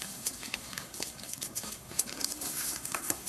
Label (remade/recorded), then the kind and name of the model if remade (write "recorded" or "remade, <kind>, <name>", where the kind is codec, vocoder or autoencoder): remade, codec, SNAC